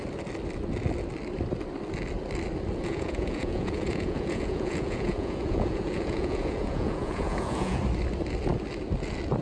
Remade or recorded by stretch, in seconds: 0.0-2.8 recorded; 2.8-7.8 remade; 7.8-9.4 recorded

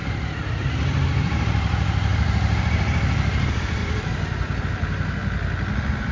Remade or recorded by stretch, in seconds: 0.0-0.5 recorded; 0.5-5.2 remade; 5.2-6.1 recorded